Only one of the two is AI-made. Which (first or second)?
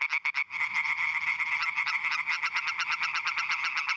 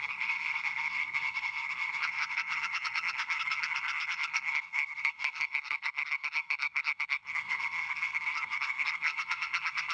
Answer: second